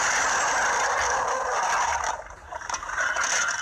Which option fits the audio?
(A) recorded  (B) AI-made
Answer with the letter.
A